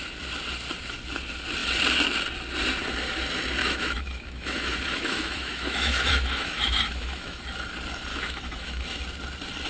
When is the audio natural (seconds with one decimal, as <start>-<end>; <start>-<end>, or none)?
0.0-3.6; 7.4-8.1; 9.0-9.7